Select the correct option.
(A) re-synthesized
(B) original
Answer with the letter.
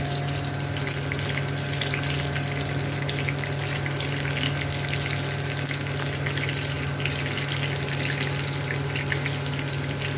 B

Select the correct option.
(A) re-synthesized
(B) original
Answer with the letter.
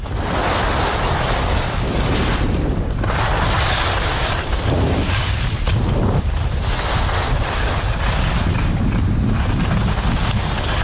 B